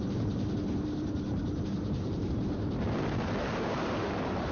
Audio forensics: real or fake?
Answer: fake